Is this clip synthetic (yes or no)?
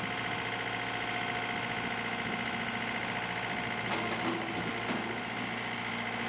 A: no